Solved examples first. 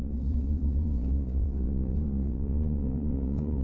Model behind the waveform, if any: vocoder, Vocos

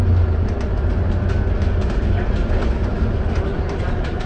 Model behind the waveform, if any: none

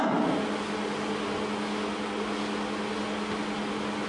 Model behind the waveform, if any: none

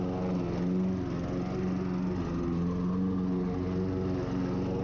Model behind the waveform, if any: none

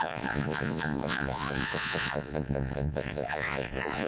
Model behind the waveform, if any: vocoder, Vocos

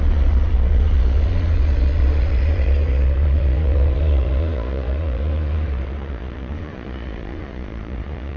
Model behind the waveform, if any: vocoder, Vocos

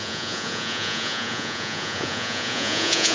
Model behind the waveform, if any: vocoder, Vocos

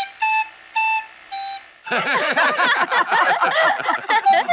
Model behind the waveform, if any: none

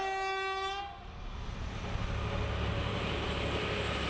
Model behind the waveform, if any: none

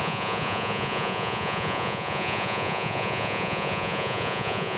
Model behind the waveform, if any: vocoder, Vocos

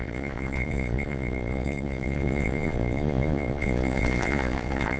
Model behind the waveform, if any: vocoder, Vocos